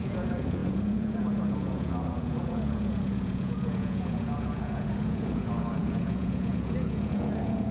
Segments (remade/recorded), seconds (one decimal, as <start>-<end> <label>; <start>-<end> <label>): 0.0-7.7 remade